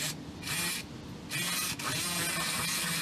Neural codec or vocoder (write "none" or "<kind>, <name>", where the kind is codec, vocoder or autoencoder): none